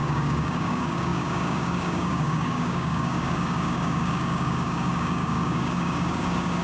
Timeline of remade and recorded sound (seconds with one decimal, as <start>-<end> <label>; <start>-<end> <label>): 0.0-6.6 remade